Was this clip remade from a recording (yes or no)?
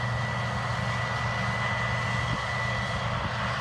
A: no